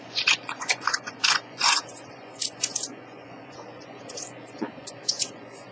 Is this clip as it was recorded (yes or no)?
no